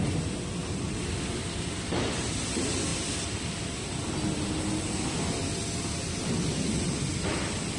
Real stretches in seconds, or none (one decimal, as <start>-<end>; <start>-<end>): 0.0-0.6; 2.3-2.9; 3.6-7.8